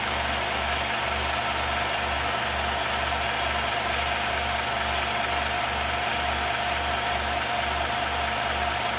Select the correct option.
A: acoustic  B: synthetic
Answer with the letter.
A